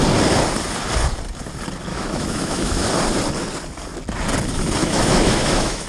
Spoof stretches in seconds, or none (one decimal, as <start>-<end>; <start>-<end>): 1.9-2.9; 4.8-5.9